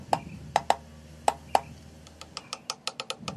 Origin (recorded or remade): recorded